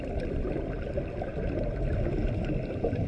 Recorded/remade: recorded